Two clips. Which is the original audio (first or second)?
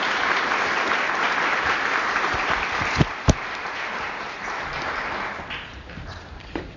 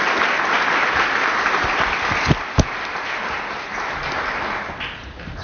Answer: second